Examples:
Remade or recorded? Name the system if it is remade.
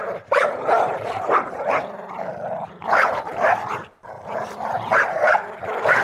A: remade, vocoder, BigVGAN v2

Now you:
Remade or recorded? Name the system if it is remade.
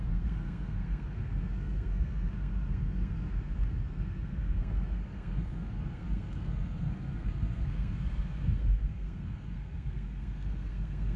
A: remade, codec, SNAC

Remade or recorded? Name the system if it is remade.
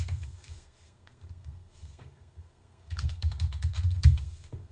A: remade, codec, SNAC